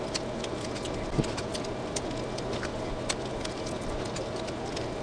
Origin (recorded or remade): remade